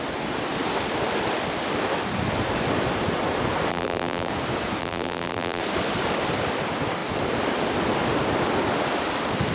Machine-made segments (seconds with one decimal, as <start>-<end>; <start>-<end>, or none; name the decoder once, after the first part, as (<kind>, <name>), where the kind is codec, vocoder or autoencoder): 3.7-4.3 (vocoder, BigVGAN v2); 4.8-5.6